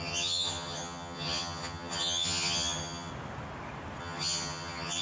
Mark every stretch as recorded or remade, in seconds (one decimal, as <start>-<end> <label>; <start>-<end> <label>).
0.0-3.1 remade; 3.1-4.0 recorded; 4.0-5.0 remade